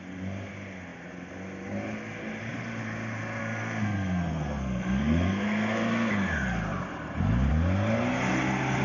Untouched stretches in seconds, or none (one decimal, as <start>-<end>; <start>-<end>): 0.0-3.4; 6.1-8.8